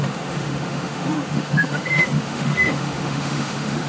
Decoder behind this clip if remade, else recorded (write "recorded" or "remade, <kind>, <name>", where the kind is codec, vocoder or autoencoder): remade, autoencoder, DAC-VAE